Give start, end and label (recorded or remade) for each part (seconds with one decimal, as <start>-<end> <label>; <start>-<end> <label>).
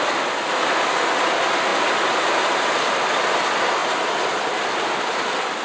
0.0-5.6 recorded